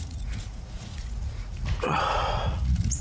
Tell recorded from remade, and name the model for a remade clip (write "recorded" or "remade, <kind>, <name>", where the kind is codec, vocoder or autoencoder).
remade, vocoder, Vocos